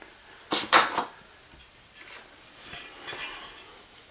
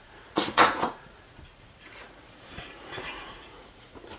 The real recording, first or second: first